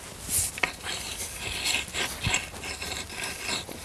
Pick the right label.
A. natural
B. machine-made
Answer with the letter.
A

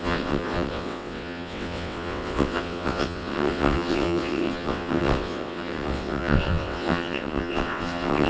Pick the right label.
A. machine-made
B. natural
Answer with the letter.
A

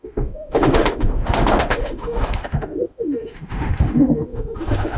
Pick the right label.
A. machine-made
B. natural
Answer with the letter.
A